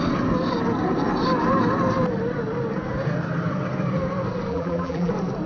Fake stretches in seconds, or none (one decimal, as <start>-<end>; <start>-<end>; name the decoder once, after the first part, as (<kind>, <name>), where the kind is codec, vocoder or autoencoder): 4.5-5.1 (vocoder, BigVGAN v2)